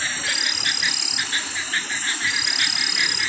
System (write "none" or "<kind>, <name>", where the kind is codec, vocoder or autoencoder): none